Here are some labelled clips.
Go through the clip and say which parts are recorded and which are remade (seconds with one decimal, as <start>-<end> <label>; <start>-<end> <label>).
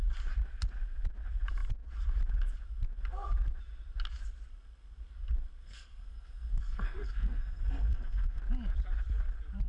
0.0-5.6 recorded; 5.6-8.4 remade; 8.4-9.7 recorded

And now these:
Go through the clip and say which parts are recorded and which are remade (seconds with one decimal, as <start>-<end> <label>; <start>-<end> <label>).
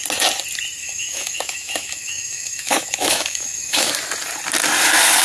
0.0-0.8 recorded; 0.8-3.9 remade; 3.9-5.2 recorded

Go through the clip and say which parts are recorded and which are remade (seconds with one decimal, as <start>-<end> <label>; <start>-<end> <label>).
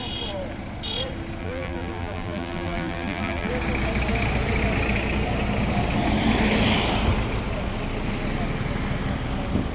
0.0-1.4 recorded; 1.4-3.5 remade; 3.5-9.7 recorded